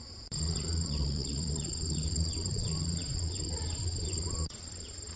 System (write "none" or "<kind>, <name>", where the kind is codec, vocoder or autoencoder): vocoder, Vocos